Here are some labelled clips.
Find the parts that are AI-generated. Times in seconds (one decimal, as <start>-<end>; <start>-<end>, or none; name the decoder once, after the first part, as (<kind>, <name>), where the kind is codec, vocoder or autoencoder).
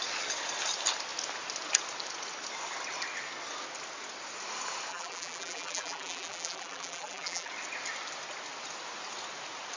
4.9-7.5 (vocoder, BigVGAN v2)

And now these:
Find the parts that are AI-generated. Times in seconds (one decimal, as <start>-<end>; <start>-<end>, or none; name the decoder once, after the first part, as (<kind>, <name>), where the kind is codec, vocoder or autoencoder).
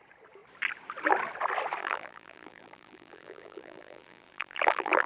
1.8-5.1 (vocoder, BigVGAN v2)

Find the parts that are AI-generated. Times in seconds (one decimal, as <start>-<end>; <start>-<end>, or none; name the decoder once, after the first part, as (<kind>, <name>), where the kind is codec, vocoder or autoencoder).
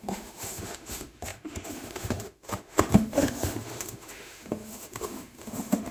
0.0-5.9 (autoencoder, DAC-VAE)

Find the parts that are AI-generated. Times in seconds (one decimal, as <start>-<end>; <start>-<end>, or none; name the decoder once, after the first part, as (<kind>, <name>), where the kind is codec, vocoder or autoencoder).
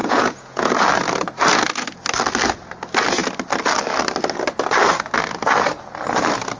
0.0-0.7 (vocoder, Vocos)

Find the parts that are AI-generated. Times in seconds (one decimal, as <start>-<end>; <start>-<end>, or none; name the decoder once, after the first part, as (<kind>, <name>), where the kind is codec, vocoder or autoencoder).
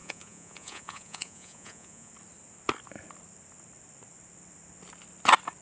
0.0-2.1 (vocoder, Vocos)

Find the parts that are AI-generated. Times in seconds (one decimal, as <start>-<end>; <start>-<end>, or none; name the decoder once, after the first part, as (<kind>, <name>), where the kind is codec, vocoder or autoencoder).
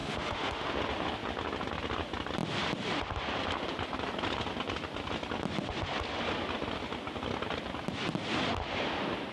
0.0-0.7 (autoencoder, DAC-VAE)